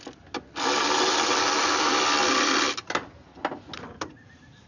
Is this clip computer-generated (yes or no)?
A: no